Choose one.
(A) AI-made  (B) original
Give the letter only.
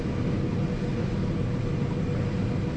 B